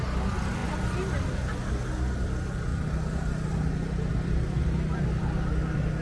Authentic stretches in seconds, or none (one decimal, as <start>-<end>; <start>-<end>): 0.0-2.7; 4.8-6.0